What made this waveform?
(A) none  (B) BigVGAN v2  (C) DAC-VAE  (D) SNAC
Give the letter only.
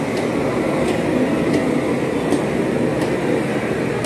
A